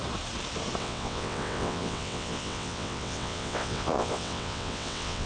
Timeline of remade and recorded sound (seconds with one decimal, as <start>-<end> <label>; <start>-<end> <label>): 0.0-0.8 recorded; 0.8-5.3 remade